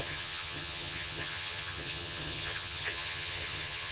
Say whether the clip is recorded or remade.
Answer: remade